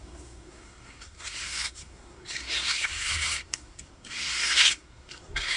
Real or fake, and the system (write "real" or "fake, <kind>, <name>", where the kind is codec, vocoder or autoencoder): fake, codec, SNAC